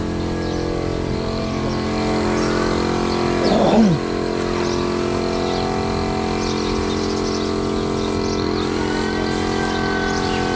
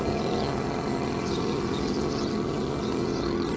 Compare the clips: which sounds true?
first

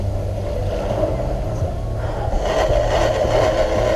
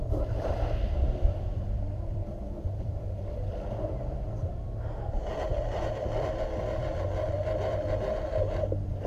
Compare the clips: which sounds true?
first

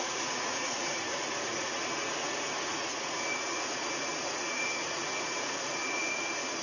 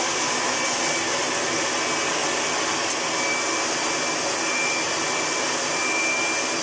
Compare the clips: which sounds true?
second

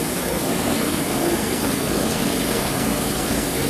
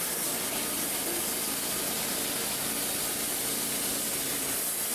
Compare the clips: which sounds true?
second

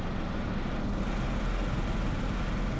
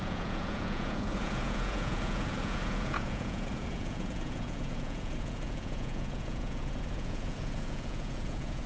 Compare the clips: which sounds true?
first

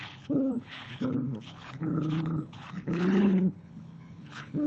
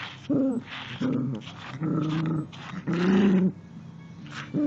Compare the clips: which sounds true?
second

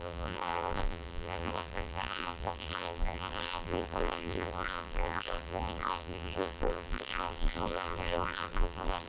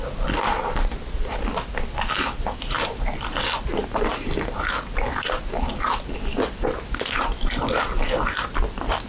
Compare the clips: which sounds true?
second